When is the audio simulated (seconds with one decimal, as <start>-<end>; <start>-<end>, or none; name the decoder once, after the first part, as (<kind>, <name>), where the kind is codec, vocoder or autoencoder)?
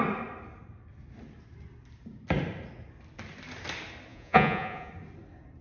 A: 4.1-4.9 (vocoder, Vocos)